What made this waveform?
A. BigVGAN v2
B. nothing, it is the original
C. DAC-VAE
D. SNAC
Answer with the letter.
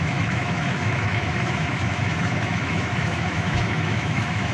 C